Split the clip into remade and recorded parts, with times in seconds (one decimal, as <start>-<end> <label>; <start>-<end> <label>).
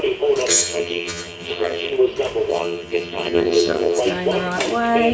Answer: 0.0-0.5 recorded; 0.5-1.9 remade; 1.9-2.5 recorded; 2.5-4.0 remade; 4.0-5.1 recorded